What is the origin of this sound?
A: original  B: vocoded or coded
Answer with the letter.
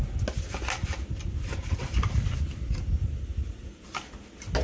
A